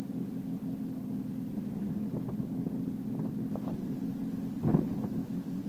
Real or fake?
real